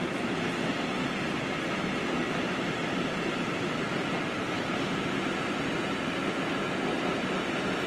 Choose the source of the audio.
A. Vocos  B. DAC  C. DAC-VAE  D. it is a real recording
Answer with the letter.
D